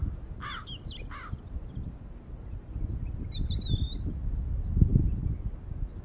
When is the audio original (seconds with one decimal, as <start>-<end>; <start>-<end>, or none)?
0.0-6.0